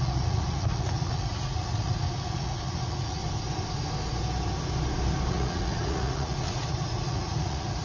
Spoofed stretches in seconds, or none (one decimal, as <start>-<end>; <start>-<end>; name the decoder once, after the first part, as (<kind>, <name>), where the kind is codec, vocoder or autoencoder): 0.0-3.2 (vocoder, Vocos); 5.3-7.8